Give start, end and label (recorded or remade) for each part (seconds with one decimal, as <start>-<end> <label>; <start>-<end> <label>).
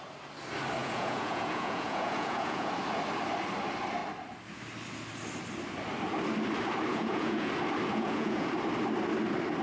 0.0-0.8 recorded; 0.8-2.7 remade; 2.7-6.9 recorded; 6.9-7.5 remade; 7.5-7.9 recorded; 7.9-8.5 remade; 8.5-9.6 recorded